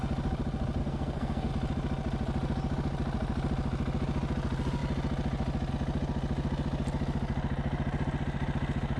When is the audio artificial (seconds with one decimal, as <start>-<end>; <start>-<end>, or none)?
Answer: 0.8-1.5

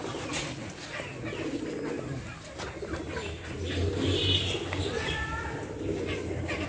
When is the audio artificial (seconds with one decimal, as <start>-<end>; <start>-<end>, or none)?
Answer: none

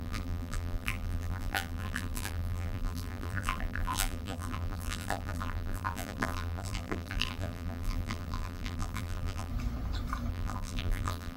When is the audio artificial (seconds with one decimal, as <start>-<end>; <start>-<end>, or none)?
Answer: 0.0-9.5; 10.3-11.4

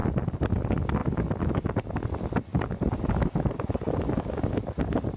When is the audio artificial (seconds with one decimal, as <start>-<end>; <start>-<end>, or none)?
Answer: 2.5-4.0

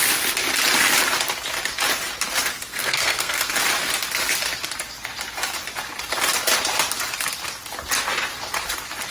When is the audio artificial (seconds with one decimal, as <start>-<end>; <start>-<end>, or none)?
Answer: 2.7-3.5